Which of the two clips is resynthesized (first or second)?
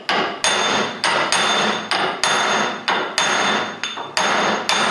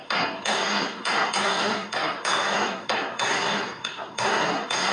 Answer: second